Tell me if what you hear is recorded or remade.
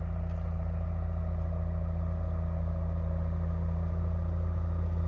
recorded